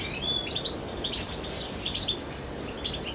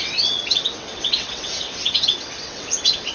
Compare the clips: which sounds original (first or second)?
first